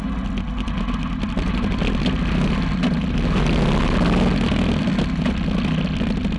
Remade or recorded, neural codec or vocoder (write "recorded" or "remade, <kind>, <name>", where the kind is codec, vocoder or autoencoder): recorded